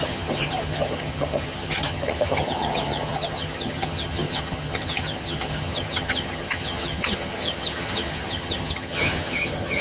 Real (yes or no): no